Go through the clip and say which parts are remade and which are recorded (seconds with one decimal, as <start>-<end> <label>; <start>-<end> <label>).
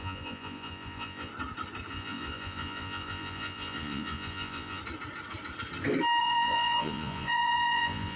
0.0-1.3 remade; 1.3-1.9 recorded; 1.9-4.8 remade; 4.8-6.2 recorded; 6.2-8.2 remade